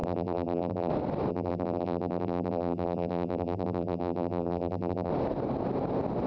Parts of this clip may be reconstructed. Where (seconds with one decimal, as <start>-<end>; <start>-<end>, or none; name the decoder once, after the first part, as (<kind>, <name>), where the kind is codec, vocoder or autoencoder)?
0.0-0.9 (vocoder, BigVGAN v2); 1.3-5.1